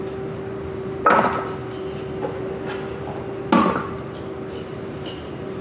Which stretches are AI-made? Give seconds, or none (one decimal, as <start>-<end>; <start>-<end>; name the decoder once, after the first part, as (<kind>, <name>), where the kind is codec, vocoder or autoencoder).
none

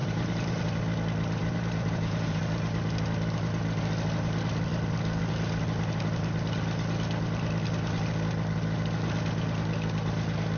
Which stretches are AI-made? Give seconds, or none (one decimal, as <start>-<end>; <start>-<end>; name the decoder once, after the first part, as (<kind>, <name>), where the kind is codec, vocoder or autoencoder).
0.0-0.6 (vocoder, BigVGAN v2); 1.4-2.4

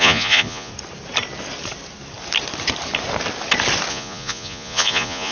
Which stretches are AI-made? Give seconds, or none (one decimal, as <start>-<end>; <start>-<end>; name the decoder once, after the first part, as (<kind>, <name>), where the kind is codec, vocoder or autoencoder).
0.0-0.7 (vocoder, Vocos); 3.9-5.3

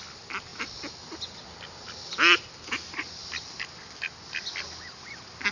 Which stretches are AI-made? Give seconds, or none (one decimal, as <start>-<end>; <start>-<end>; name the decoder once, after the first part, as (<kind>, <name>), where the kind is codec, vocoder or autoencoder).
none

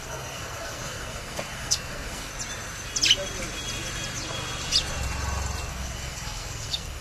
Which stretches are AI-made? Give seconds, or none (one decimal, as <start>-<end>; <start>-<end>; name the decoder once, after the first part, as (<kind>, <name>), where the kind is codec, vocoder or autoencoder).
0.0-2.3 (codec, SNAC); 5.7-7.0

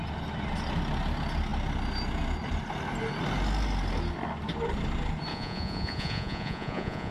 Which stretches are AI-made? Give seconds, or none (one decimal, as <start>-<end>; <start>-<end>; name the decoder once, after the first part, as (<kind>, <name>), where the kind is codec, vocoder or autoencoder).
5.3-7.1 (vocoder, Vocos)